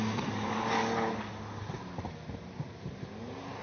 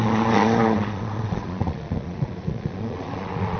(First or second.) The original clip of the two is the first